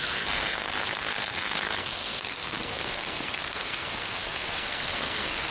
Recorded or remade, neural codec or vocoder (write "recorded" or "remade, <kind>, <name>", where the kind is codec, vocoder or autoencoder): remade, codec, SNAC